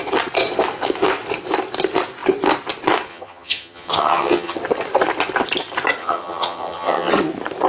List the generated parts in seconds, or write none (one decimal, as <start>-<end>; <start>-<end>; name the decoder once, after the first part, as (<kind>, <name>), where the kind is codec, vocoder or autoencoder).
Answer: 3.1-4.6 (vocoder, HiFi-GAN); 6.0-7.1